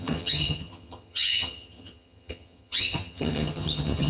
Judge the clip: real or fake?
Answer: fake